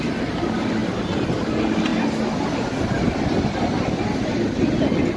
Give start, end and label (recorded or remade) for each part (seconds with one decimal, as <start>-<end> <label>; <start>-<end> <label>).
0.0-5.2 recorded